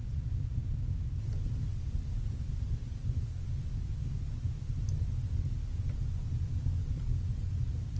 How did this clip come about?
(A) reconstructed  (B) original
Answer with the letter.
B